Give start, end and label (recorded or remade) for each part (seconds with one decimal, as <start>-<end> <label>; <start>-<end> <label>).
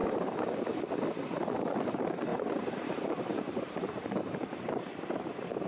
0.0-0.8 remade; 0.8-2.3 recorded; 2.3-5.7 remade